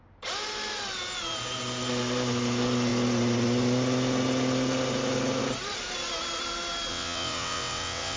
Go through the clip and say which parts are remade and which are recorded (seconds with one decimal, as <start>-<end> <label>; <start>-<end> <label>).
0.0-6.9 recorded; 6.9-8.2 remade